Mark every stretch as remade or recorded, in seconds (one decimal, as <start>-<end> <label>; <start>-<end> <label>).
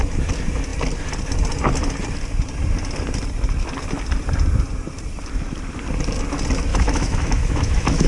0.0-6.7 recorded; 6.7-8.1 remade